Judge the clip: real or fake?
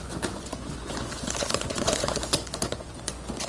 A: fake